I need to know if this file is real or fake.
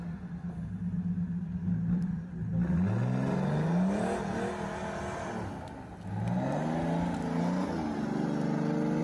real